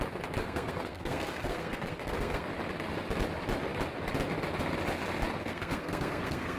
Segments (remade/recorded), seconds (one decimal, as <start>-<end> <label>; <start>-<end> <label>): 0.0-0.4 recorded; 0.4-2.5 remade; 2.5-5.4 recorded; 5.4-6.6 remade

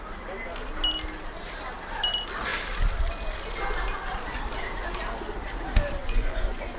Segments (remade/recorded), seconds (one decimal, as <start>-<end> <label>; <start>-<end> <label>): 0.0-6.0 recorded; 6.0-6.8 remade

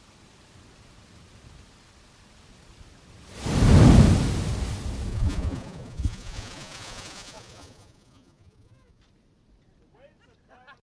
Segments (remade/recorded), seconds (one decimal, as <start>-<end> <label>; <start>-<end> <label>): 0.0-5.1 recorded; 5.1-9.0 remade; 9.0-11.0 recorded